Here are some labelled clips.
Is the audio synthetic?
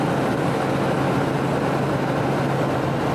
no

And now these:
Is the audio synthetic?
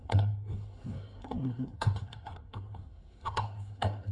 yes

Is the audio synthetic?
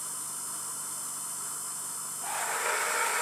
no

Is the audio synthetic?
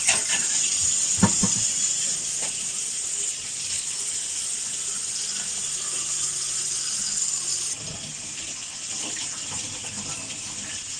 no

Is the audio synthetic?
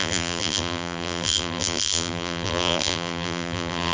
yes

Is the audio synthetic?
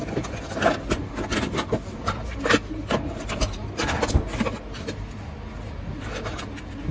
no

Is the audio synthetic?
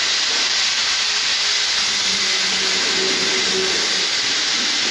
no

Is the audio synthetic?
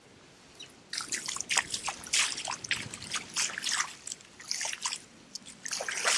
no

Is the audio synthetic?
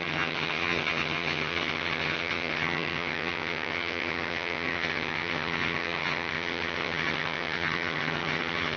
yes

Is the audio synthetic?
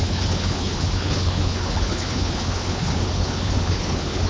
yes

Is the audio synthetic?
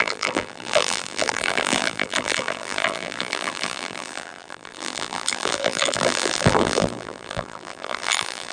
yes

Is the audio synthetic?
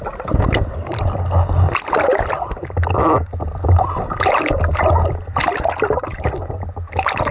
no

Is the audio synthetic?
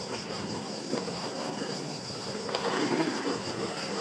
yes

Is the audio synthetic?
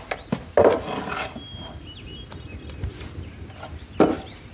no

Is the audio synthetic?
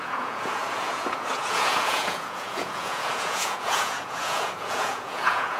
yes